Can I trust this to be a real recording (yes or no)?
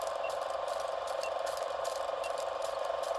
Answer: no